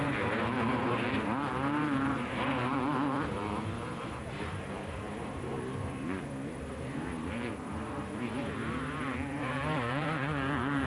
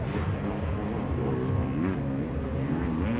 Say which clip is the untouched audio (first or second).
second